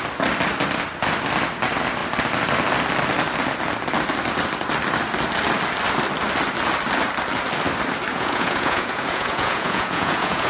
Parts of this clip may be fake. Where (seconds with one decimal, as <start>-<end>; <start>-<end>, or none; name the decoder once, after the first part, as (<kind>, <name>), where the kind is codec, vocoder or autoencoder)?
8.1-10.5 (vocoder, Vocos)